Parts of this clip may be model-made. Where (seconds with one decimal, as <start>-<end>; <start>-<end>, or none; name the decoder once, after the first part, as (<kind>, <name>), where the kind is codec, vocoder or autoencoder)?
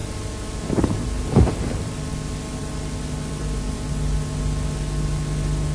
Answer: 0.0-2.1 (vocoder, BigVGAN v2); 2.6-3.9